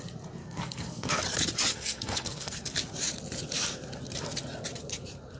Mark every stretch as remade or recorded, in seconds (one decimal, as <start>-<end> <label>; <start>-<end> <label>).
0.0-0.4 recorded; 0.4-1.2 remade; 1.2-1.7 recorded; 1.7-2.6 remade; 2.6-5.4 recorded